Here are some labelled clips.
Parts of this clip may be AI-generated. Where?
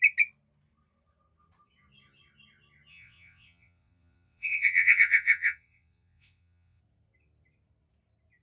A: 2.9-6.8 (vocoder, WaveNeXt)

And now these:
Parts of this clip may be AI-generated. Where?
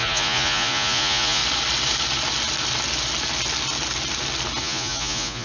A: 0.0-1.4 (vocoder, Vocos); 4.6-5.4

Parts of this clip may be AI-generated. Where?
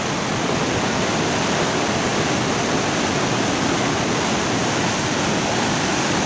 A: none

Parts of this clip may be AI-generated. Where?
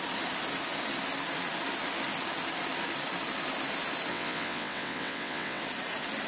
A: 4.1-5.6 (vocoder, WaveNeXt)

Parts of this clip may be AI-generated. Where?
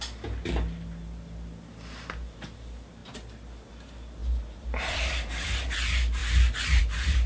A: 0.0-3.0 (vocoder, BigVGAN v2); 3.7-4.2; 4.9-6.2; 6.8-7.3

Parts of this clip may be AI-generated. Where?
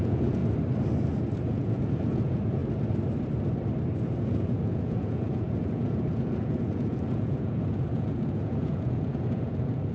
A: 0.0-0.4 (vocoder, Vocos); 1.5-2.6; 4.0-9.9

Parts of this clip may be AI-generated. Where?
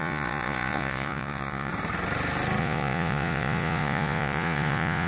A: 0.0-1.7 (vocoder, Vocos); 2.6-5.1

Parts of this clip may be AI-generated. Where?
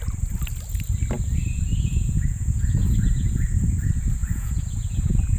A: 1.7-3.4 (vocoder, Vocos); 4.2-5.4